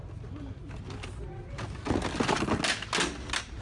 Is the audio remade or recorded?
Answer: recorded